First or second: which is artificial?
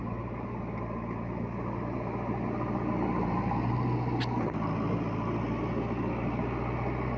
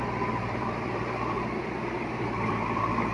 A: second